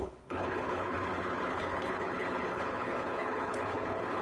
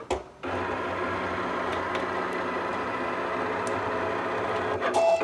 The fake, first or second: first